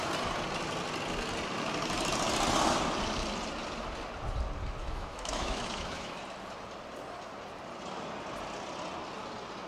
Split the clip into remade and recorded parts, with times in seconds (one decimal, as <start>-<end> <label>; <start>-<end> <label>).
0.0-4.8 recorded; 4.8-6.2 remade; 6.2-9.7 recorded